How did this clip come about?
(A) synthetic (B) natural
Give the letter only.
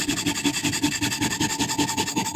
B